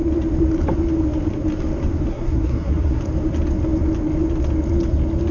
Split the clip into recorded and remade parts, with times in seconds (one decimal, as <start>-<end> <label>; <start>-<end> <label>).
0.0-2.1 recorded; 2.1-3.0 remade; 3.0-5.3 recorded